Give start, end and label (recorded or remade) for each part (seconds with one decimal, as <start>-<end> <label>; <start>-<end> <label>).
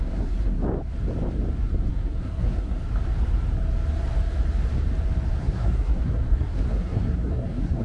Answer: 0.0-0.6 remade; 0.6-1.9 recorded; 1.9-2.8 remade; 2.8-5.4 recorded; 5.4-7.8 remade